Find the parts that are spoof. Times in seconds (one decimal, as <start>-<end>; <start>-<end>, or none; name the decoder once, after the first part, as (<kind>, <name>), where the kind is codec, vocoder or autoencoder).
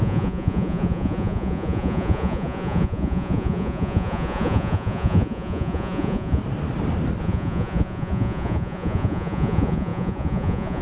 0.0-6.4 (vocoder, Vocos); 7.2-10.8